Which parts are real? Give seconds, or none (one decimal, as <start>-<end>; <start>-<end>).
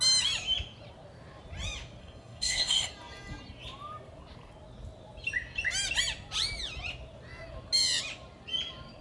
0.0-2.0; 2.9-9.0